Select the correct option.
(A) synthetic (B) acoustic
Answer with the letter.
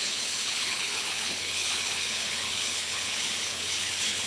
A